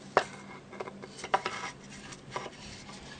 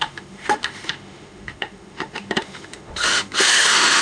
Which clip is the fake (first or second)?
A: second